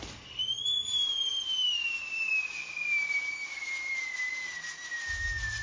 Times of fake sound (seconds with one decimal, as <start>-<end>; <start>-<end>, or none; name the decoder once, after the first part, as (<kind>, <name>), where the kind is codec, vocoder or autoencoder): none